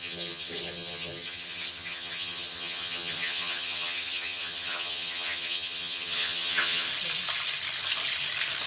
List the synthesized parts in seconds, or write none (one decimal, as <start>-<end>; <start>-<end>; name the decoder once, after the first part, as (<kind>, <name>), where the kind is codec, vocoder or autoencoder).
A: 0.0-6.9 (vocoder, HiFi-GAN)

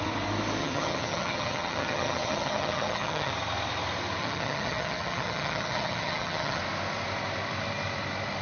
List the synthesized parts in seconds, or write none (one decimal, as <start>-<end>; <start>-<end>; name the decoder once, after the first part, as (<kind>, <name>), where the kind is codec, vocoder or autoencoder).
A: 0.6-3.3 (vocoder, HiFi-GAN); 4.2-6.6

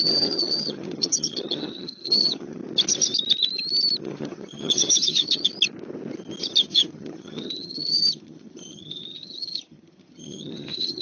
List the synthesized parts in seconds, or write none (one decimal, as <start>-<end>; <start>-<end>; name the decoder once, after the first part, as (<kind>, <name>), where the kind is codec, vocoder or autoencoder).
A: 0.0-2.6 (vocoder, HiFi-GAN); 4.0-5.5; 6.6-11.0

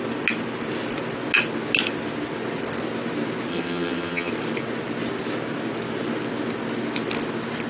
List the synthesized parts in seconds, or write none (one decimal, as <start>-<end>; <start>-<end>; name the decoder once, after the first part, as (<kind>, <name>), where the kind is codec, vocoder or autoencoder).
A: 3.5-4.3 (vocoder, HiFi-GAN)